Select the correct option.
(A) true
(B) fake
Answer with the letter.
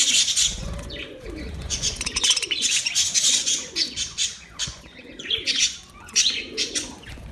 B